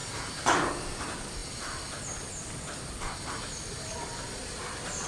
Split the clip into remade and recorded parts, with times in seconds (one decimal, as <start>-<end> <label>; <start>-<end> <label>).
0.0-0.7 remade; 0.7-4.4 recorded; 4.4-5.1 remade